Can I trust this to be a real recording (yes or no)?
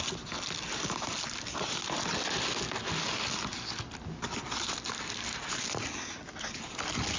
yes